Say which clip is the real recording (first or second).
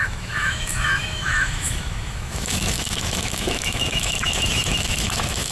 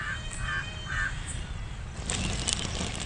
second